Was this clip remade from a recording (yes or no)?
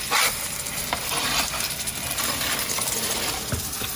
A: yes